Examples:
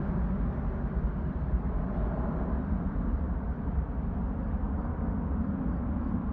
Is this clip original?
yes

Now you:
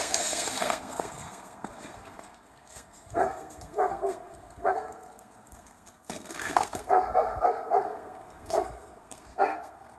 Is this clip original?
no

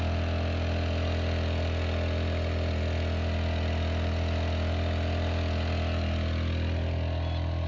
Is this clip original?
yes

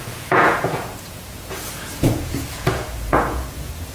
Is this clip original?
no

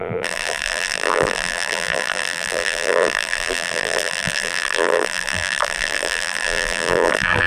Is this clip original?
no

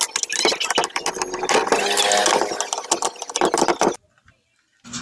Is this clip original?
yes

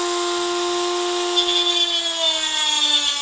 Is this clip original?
yes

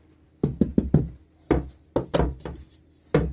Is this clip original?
yes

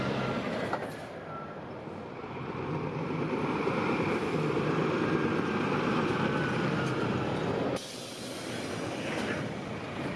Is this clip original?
no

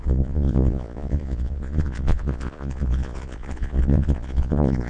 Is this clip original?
no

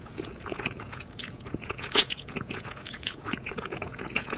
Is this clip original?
no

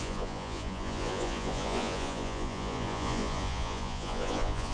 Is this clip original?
no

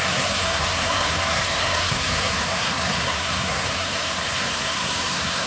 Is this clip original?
no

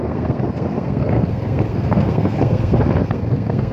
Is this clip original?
no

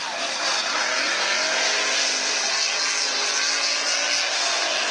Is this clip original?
yes